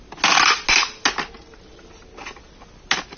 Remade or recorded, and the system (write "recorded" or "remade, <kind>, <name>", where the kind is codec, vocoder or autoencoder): recorded